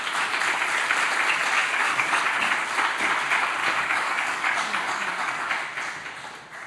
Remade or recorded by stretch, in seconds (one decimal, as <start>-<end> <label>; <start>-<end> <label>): 0.0-1.6 recorded; 1.6-2.4 remade; 2.4-3.6 recorded; 3.6-5.5 remade; 5.5-6.7 recorded